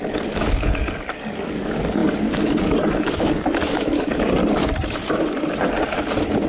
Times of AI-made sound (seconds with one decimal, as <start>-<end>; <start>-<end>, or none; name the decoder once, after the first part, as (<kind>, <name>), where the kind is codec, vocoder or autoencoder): 0.0-4.4 (codec, DAC)